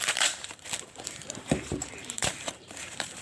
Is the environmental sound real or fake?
fake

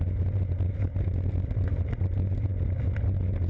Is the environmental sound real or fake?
real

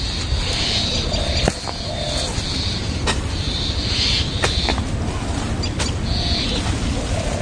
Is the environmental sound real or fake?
real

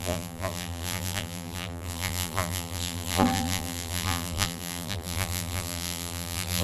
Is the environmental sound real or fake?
fake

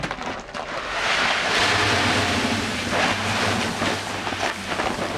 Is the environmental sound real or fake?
real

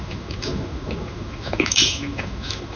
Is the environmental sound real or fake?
fake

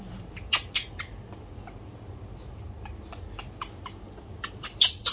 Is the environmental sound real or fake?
real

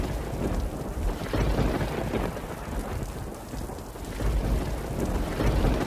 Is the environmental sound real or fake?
real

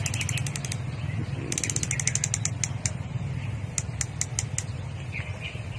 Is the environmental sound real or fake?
real